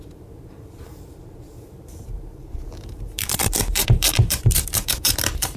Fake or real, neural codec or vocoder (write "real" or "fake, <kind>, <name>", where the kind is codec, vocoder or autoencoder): fake, vocoder, BigVGAN v2